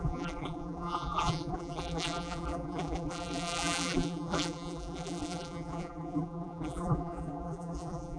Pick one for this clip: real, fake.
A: fake